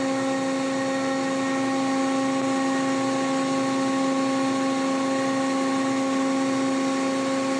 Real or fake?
real